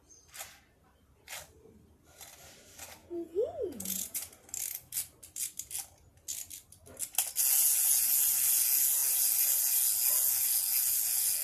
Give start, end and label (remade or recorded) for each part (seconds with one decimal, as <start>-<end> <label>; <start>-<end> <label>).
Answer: 0.0-3.0 recorded; 3.0-4.3 remade; 4.3-11.4 recorded